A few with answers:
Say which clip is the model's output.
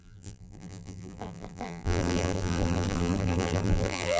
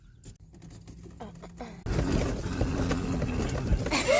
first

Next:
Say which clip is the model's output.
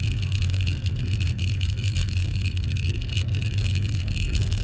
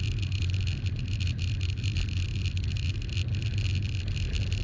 first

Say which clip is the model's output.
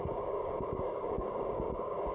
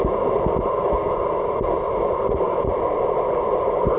first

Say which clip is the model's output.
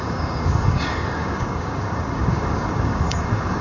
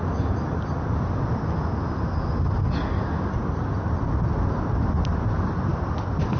first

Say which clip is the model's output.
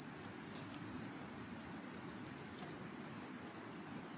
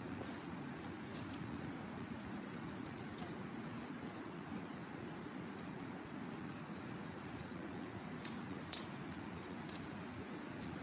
second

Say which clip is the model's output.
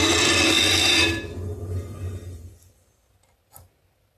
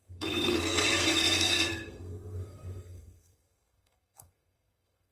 second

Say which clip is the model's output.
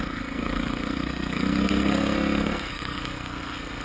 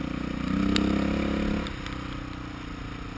first